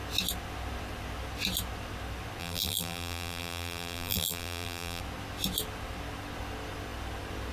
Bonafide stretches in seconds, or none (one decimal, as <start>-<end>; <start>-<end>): 0.0-2.4; 5.0-7.5